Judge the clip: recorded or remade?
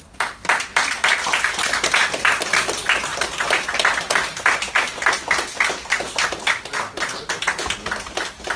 recorded